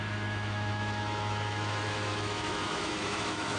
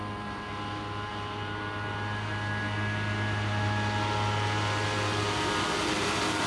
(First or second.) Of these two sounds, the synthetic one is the first